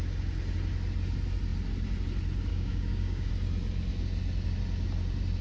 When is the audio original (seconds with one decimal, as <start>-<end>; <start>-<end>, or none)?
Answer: 0.0-2.5; 3.3-5.4